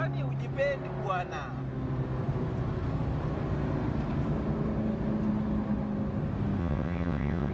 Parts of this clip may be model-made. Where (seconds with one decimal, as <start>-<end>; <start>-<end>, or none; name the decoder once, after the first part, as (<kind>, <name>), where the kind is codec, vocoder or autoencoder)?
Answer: 6.6-7.5 (vocoder, WaveNeXt)